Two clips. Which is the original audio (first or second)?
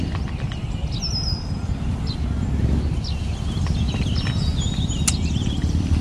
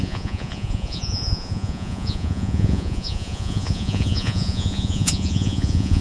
first